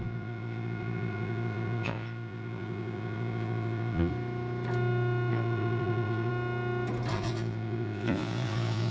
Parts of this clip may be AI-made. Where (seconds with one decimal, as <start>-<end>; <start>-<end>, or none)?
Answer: 0.0-4.1; 5.3-6.3; 7.1-8.9

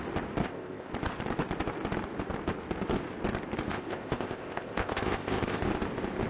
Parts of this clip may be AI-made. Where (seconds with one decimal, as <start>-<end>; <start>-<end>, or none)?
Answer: 0.4-0.9; 3.7-5.6

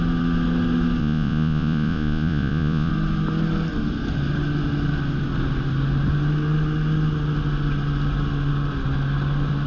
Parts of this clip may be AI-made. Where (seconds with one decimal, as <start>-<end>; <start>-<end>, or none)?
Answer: 1.0-2.9

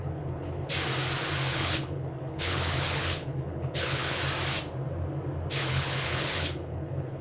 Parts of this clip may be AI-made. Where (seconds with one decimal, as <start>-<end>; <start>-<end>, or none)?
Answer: 0.0-0.7; 1.5-4.2; 5.6-7.2

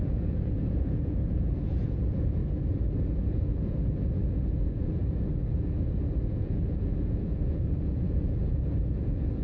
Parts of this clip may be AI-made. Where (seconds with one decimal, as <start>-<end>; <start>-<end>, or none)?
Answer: 0.0-2.4; 3.0-5.0; 6.2-9.4

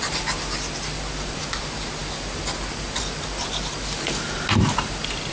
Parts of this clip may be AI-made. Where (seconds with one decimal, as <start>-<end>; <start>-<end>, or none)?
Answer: none

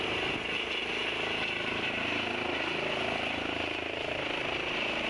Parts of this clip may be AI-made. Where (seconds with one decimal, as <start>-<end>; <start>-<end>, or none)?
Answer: none

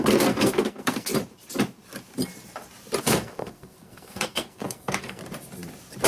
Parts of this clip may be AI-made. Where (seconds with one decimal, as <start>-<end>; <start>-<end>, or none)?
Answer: 0.0-1.1; 3.0-5.2